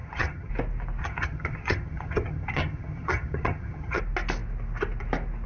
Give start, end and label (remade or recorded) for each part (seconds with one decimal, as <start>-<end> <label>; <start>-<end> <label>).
0.0-0.5 remade; 0.5-1.0 recorded; 1.0-4.0 remade; 4.0-5.5 recorded